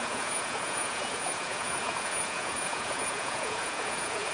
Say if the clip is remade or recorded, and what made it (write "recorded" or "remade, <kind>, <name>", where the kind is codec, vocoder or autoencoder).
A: remade, vocoder, Vocos